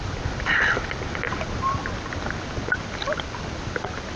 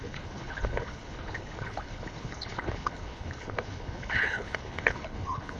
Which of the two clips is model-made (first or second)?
second